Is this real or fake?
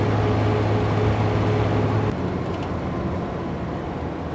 real